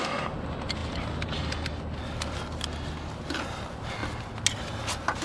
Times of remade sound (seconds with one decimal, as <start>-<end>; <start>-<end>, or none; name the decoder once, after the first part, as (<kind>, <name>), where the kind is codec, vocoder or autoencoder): none